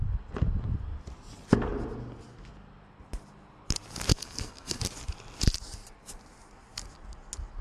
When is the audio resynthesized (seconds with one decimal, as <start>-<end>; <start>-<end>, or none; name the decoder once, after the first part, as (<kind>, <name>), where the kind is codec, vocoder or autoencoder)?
4.1-4.8 (codec, SNAC)